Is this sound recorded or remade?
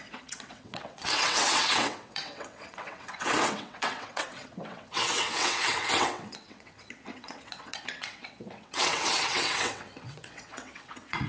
remade